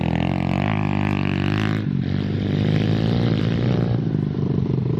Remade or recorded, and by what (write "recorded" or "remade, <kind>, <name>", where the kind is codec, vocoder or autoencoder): recorded